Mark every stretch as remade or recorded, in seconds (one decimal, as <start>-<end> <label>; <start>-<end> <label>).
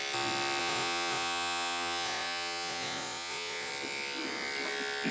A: 0.0-0.6 recorded; 0.6-3.7 remade; 3.7-5.1 recorded